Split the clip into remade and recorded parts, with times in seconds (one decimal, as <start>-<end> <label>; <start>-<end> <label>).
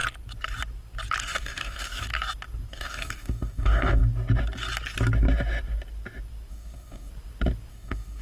0.0-1.2 recorded; 1.2-2.1 remade; 2.1-2.7 recorded; 2.7-4.0 remade; 4.0-6.5 recorded; 6.5-7.1 remade; 7.1-7.7 recorded; 7.7-8.2 remade